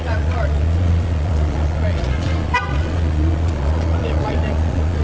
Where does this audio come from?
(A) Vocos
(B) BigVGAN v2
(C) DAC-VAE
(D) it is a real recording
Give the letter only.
A